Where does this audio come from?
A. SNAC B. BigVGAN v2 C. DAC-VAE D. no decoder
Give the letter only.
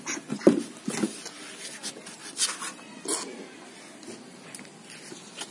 D